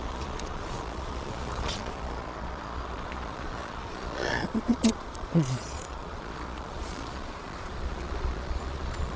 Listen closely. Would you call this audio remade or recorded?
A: remade